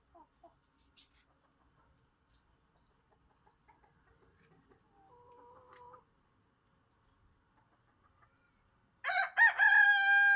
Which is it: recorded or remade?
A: recorded